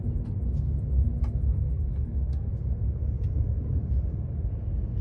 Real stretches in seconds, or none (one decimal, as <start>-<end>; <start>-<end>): 0.0-1.5; 2.5-5.0